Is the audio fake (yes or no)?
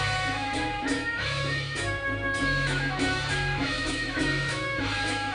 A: yes